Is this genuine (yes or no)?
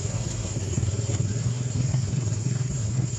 no